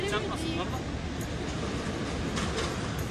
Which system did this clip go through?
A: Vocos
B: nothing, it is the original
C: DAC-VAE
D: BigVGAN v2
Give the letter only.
B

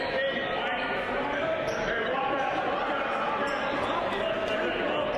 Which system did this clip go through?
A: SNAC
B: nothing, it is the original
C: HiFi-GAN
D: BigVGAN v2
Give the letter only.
B